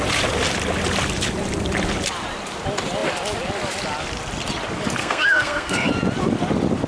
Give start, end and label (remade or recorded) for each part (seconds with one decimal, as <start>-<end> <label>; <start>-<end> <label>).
0.0-5.0 recorded; 5.0-5.9 remade; 5.9-6.9 recorded